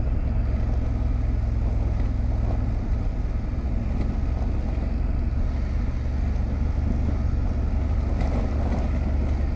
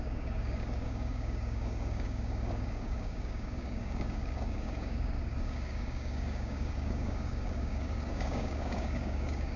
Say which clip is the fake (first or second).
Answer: second